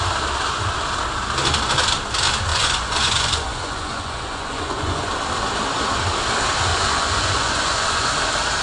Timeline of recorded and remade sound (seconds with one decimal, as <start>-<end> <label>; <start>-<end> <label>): 0.0-2.5 recorded; 2.5-5.1 remade; 5.1-6.7 recorded; 6.7-8.1 remade; 8.1-8.6 recorded